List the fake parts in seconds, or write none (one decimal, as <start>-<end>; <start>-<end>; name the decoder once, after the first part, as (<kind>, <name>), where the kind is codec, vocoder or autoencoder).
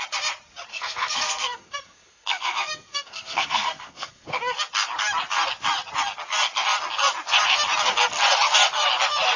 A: 0.7-4.4 (codec, SNAC)